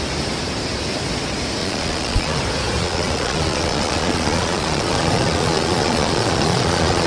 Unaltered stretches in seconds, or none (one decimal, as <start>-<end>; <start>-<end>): 0.0-1.6; 2.4-2.8